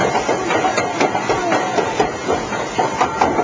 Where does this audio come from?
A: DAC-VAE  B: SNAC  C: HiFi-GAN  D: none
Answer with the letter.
D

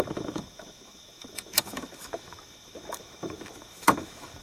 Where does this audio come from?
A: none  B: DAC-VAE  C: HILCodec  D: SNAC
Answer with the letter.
B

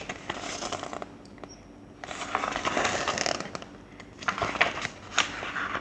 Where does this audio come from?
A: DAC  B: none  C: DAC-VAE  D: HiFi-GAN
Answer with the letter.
B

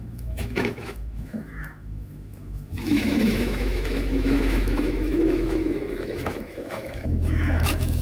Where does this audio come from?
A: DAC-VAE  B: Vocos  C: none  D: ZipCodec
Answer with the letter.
A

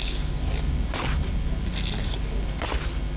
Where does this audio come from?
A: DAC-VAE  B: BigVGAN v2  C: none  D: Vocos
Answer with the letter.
C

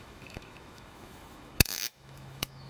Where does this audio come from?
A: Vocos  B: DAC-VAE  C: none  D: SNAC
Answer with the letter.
B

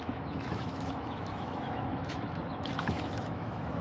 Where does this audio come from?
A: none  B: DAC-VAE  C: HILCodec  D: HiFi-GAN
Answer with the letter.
B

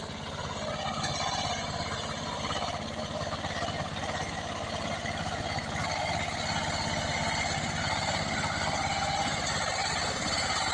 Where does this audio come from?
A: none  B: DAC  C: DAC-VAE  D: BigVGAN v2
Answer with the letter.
A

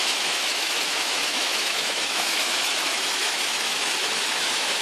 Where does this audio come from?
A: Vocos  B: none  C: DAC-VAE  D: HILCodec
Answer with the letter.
C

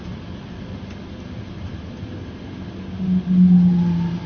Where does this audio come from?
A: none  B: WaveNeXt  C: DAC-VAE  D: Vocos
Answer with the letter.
A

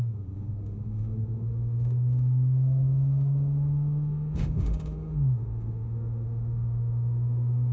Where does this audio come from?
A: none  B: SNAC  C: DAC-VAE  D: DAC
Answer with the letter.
C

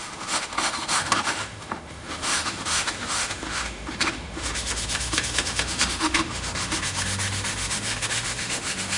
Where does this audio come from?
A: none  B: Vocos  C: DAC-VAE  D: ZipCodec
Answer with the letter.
C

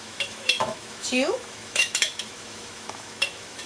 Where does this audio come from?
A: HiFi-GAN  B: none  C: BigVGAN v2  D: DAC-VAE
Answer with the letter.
D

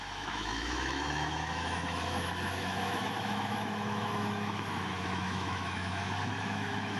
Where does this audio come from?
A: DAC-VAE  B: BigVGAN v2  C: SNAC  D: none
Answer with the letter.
A